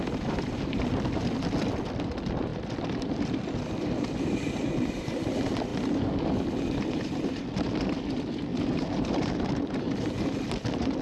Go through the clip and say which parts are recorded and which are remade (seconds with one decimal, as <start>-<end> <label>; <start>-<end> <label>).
0.0-8.5 recorded; 8.5-9.8 remade; 9.8-11.0 recorded